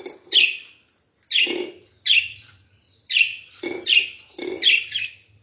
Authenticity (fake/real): real